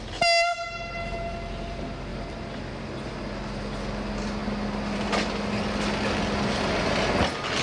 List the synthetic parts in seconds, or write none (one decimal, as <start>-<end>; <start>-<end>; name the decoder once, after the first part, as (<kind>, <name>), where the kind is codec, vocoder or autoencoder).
none